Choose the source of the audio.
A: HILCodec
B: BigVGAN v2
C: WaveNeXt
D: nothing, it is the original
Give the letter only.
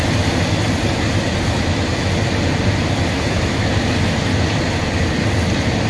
D